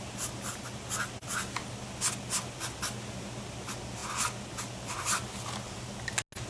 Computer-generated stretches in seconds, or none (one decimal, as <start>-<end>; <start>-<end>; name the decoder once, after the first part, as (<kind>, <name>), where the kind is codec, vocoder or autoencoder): none